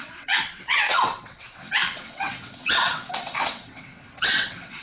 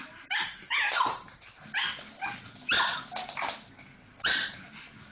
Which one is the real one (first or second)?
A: second